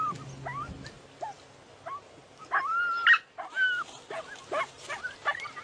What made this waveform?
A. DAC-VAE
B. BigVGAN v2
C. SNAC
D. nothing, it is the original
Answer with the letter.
D